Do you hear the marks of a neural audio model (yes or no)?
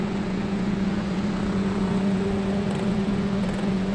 yes